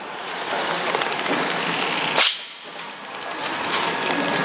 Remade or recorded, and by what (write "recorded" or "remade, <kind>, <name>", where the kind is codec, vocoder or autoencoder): recorded